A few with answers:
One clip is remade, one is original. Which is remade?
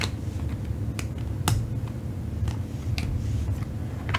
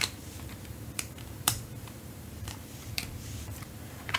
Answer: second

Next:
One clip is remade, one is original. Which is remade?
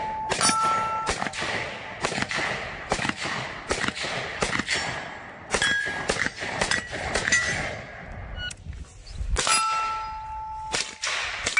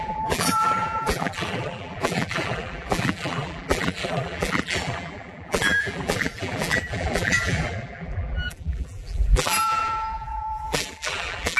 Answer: second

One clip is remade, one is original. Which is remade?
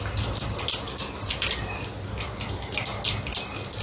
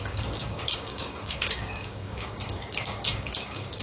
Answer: second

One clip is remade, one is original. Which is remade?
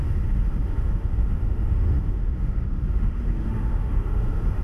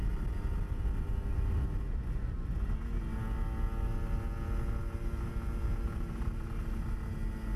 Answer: first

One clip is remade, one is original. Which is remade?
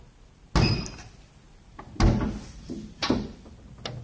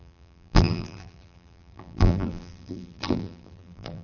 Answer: second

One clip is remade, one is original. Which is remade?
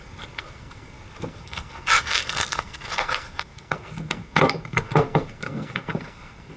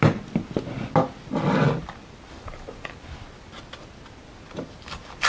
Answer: first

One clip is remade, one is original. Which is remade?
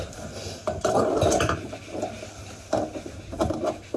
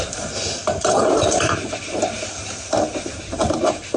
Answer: second